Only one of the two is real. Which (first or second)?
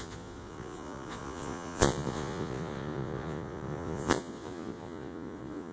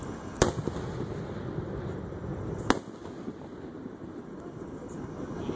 second